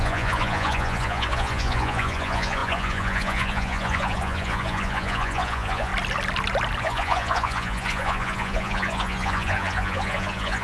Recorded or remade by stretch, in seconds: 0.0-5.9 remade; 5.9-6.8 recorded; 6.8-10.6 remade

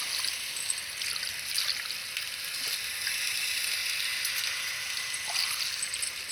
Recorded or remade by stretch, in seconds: 0.0-6.3 recorded

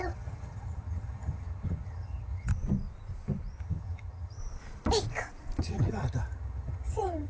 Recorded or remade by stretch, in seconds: 0.0-2.5 remade; 2.5-3.6 recorded; 3.6-4.4 remade; 4.4-5.6 recorded; 5.6-7.3 remade

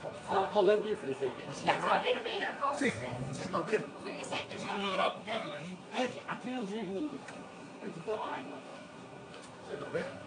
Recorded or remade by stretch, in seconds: 0.0-10.3 remade

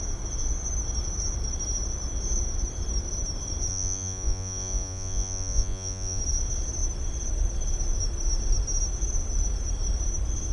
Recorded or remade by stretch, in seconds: 0.0-3.7 recorded; 3.7-6.2 remade; 6.2-10.5 recorded

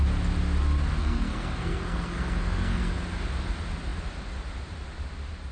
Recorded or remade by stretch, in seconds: 0.0-1.0 recorded; 1.0-2.9 remade; 2.9-5.5 recorded